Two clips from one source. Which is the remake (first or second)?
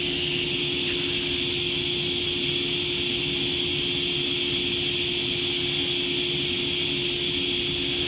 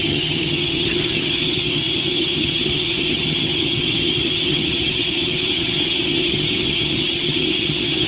second